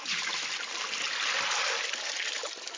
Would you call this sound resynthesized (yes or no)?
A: no